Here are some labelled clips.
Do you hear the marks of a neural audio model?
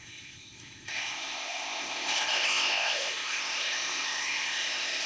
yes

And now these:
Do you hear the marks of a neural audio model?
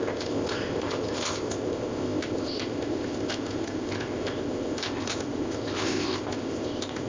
yes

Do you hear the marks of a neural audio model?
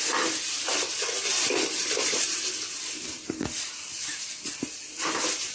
no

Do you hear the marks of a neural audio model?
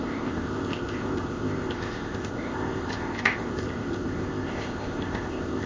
yes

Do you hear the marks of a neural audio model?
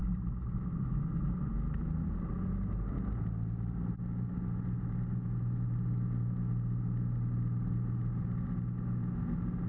no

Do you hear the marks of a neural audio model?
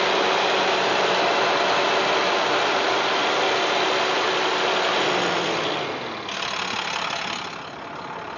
no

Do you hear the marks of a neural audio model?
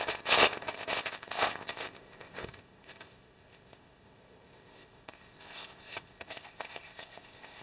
yes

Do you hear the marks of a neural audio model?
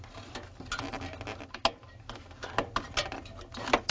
no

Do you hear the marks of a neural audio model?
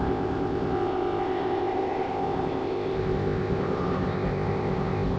yes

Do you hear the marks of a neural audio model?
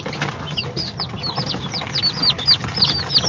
no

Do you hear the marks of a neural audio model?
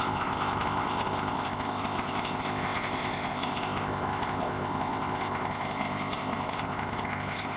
yes